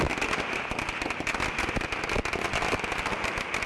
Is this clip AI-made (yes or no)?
no